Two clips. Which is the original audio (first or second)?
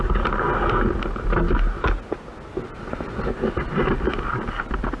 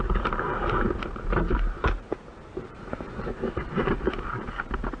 first